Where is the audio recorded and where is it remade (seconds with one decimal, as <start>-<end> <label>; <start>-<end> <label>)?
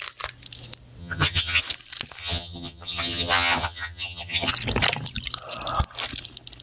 0.0-1.0 recorded; 1.0-1.6 remade; 1.6-2.2 recorded; 2.2-4.5 remade; 4.5-6.6 recorded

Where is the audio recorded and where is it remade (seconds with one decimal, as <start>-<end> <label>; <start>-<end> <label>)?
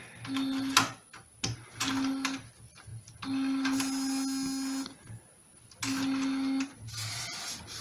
0.0-7.8 recorded